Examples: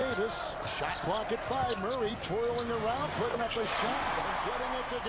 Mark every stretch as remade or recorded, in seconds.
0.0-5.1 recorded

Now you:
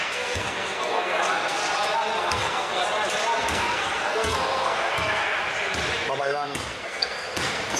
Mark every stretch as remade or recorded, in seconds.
0.0-1.6 remade; 1.6-2.2 recorded; 2.2-2.8 remade; 2.8-3.4 recorded; 3.4-5.4 remade; 5.4-6.2 recorded; 6.2-7.8 remade

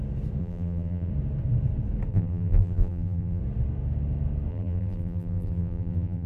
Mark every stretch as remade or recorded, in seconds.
0.0-0.4 recorded; 0.4-1.1 remade; 1.1-2.1 recorded; 2.1-3.4 remade; 3.4-4.5 recorded; 4.5-6.3 remade